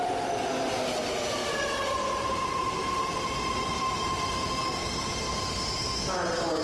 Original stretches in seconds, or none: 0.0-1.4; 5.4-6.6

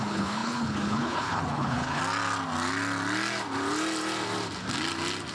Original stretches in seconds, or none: 2.0-5.3

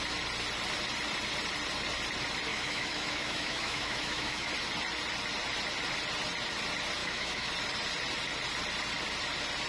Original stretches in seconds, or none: 0.0-2.5; 4.5-7.0; 7.5-9.7